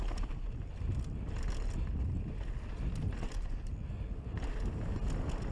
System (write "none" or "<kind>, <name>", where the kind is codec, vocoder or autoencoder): none